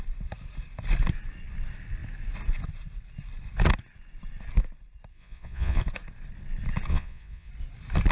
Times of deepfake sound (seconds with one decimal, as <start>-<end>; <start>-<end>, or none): 5.1-5.8; 6.9-7.5